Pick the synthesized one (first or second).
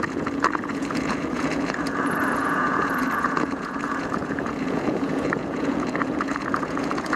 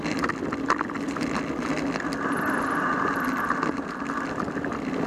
first